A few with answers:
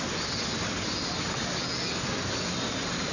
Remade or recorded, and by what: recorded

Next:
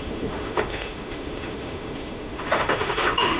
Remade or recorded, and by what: remade, autoencoder, DAC-VAE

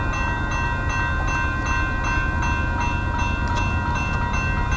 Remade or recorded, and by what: recorded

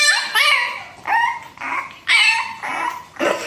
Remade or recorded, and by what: recorded